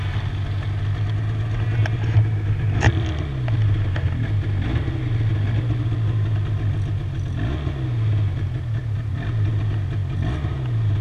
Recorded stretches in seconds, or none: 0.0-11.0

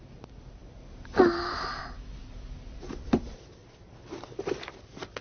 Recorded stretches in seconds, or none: 0.6-1.8; 3.6-4.4

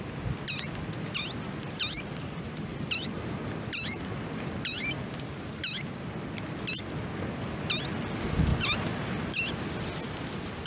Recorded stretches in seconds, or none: 0.0-2.7; 4.9-10.7

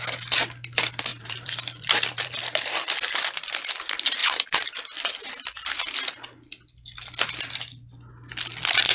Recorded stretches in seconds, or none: 0.0-1.1; 2.9-8.9

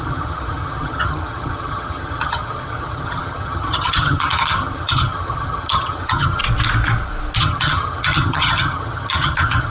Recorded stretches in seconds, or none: 6.4-7.4

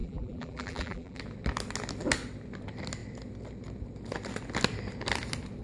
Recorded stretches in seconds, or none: 1.2-5.6

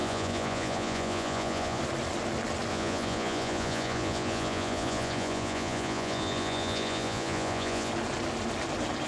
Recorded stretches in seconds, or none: 1.8-2.7; 7.9-9.1

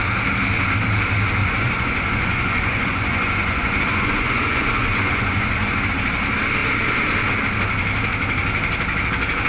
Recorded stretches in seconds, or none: 0.0-1.4; 5.9-9.5